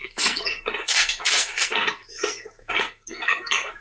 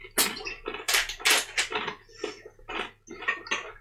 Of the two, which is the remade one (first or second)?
first